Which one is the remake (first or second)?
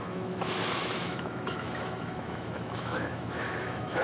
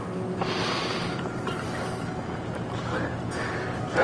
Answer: first